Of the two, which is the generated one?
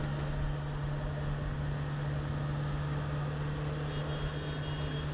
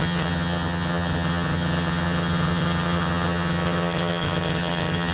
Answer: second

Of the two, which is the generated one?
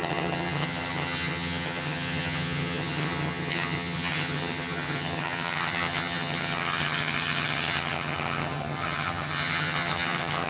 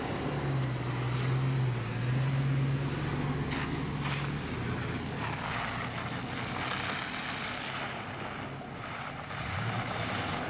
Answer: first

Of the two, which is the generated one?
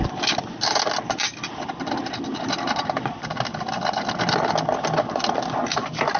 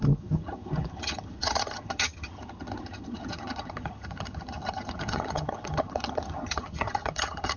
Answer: second